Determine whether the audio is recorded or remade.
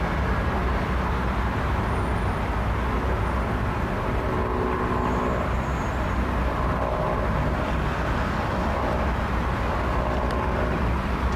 recorded